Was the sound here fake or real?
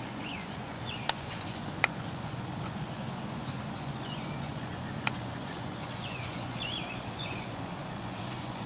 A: fake